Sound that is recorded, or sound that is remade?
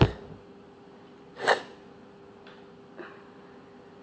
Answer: recorded